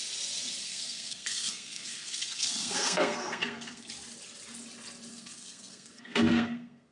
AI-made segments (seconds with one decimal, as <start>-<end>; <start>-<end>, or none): 0.6-3.9; 5.1-6.9